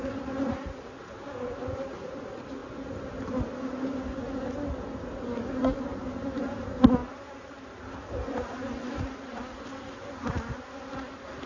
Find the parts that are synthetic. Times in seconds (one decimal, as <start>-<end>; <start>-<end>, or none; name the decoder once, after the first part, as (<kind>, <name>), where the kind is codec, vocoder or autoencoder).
none